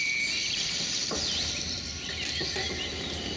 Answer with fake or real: real